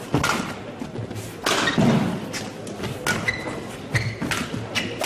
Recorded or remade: recorded